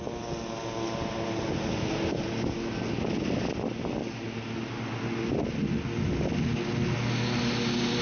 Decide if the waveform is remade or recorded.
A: recorded